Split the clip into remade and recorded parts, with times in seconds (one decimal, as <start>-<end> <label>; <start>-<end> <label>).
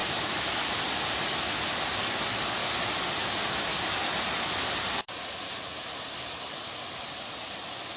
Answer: 0.0-0.5 remade; 0.5-2.6 recorded; 2.6-3.8 remade; 3.8-8.0 recorded